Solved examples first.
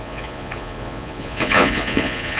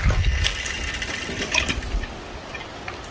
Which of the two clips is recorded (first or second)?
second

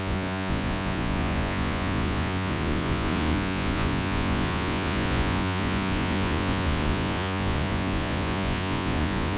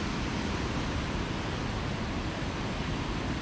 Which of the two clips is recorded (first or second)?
second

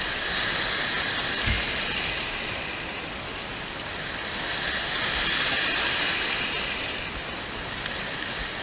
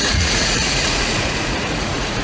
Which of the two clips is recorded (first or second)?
first